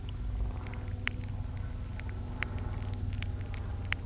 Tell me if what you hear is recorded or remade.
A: recorded